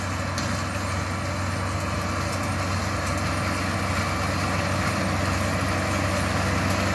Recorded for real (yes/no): yes